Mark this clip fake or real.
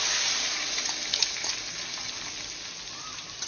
real